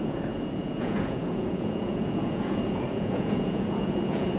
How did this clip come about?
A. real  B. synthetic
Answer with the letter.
B